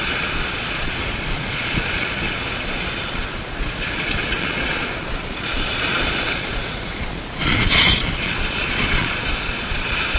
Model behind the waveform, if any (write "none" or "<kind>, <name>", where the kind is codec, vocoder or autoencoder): vocoder, Vocos